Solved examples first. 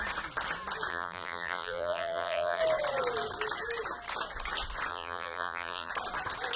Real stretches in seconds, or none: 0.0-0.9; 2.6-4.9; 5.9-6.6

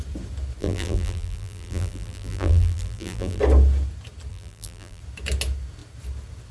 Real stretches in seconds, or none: 0.0-0.6; 3.4-4.3; 5.0-6.5

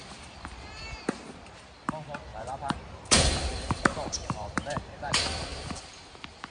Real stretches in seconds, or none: 0.0-2.3; 5.1-5.5

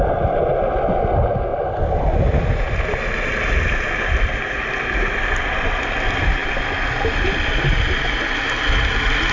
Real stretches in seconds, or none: 0.0-1.5; 5.2-9.3